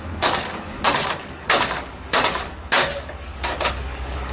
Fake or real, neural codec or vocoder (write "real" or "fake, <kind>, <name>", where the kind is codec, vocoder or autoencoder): fake, codec, DAC